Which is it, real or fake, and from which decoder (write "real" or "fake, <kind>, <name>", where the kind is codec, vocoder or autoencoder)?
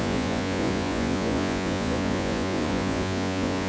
fake, vocoder, Vocos